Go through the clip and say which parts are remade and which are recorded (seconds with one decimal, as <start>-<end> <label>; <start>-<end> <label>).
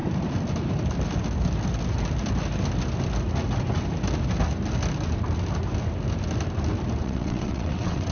0.0-7.0 recorded; 7.0-8.1 remade